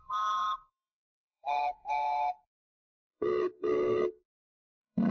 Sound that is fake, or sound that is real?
fake